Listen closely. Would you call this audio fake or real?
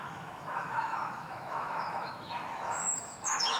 fake